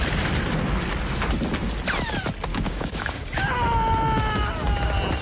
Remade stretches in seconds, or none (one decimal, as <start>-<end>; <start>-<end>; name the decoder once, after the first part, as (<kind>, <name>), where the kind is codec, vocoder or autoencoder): 2.5-3.4 (codec, DAC)

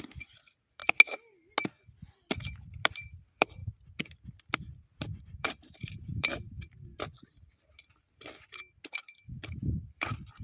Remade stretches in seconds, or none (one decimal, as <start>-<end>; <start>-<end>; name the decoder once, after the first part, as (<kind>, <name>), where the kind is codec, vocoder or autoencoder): 0.0-0.8 (vocoder, BigVGAN v2); 2.7-6.3; 8.9-10.4

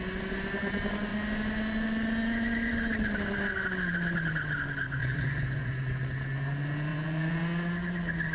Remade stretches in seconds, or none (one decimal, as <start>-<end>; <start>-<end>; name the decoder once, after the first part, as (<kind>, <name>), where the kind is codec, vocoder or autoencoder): 5.0-5.7 (vocoder, Vocos); 6.9-7.4